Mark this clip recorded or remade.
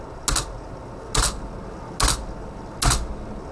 recorded